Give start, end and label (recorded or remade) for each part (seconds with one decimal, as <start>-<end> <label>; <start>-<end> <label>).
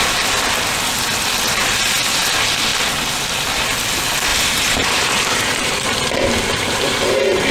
0.0-4.3 recorded; 4.3-7.5 remade